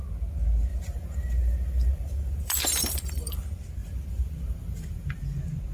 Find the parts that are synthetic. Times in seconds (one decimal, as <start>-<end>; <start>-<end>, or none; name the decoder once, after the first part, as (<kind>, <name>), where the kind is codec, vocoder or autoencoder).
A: 0.7-3.4 (vocoder, BigVGAN v2); 3.8-5.2